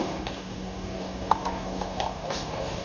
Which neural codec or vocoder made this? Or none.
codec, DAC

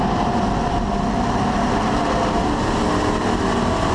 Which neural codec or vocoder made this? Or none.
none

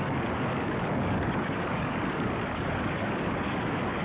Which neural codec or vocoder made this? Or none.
codec, DAC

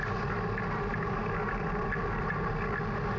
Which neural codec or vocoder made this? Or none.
none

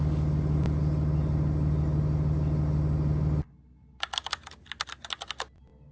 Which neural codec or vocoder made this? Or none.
none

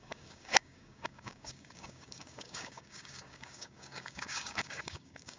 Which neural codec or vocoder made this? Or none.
codec, DAC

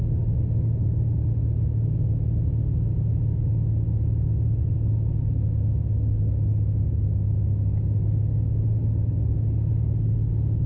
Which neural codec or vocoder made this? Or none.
none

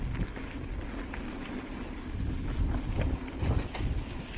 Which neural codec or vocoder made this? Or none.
none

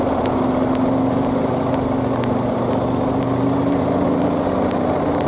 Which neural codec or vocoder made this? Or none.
none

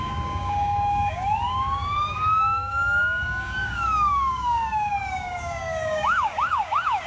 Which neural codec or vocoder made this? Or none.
codec, DAC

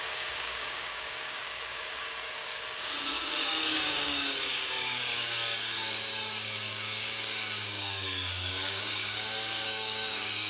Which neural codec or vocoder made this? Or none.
codec, DAC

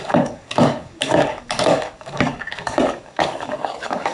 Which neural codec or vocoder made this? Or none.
codec, DAC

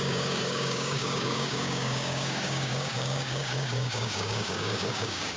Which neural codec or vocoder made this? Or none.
codec, DAC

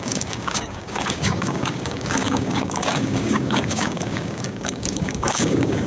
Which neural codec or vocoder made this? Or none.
codec, DAC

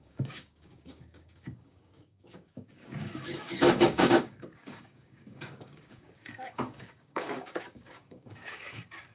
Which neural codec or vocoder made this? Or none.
codec, DAC